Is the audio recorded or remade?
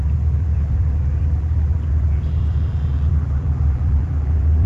remade